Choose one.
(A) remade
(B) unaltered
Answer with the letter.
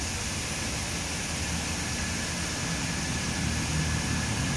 B